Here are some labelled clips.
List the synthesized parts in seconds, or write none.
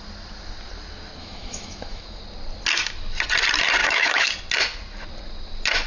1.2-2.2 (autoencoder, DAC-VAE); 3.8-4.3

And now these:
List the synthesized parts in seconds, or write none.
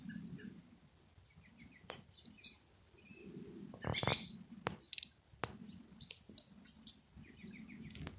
none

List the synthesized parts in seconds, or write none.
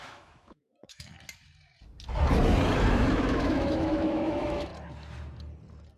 0.0-1.1 (autoencoder, DAC-VAE); 2.9-4.7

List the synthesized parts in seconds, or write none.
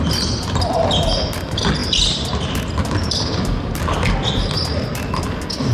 none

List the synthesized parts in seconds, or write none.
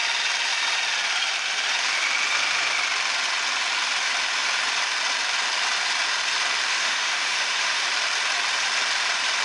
6.7-7.8 (autoencoder, DAC-VAE)